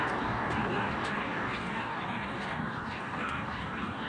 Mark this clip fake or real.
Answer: fake